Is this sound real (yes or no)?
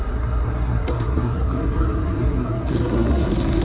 no